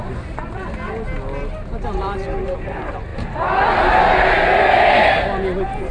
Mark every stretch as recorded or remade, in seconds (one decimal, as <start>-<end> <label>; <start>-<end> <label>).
0.0-5.9 recorded